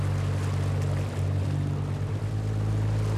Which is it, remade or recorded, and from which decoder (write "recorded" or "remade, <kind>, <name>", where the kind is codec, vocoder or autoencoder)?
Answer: recorded